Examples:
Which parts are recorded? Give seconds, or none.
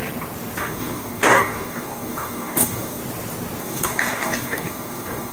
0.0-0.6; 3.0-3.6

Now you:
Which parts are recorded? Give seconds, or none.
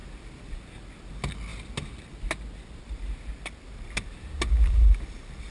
0.0-5.5